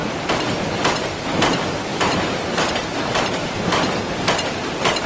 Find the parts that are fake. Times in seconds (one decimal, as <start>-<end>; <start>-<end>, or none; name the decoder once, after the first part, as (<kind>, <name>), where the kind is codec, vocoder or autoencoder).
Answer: 0.0-0.6 (vocoder, BigVGAN v2); 1.9-4.0